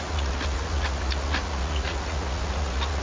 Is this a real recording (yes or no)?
no